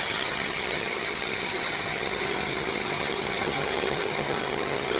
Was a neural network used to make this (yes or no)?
yes